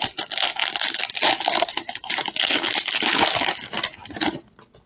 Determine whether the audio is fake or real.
real